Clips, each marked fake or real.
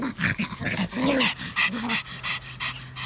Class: real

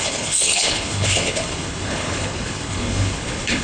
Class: fake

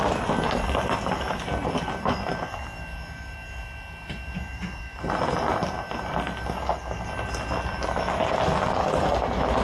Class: real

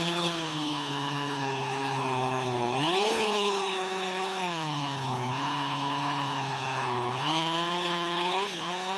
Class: fake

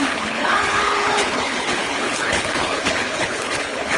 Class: fake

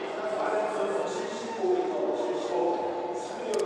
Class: real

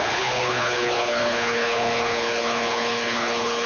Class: fake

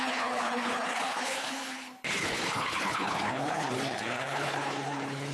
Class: fake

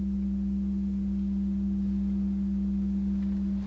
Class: real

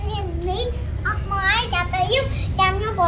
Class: real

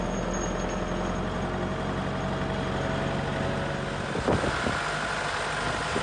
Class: real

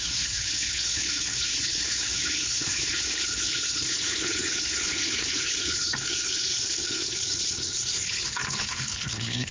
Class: fake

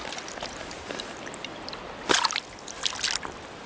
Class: real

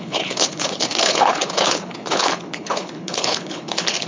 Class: fake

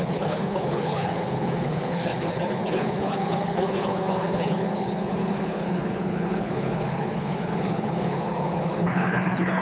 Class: fake